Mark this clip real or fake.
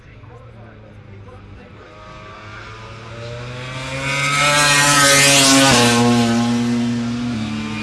real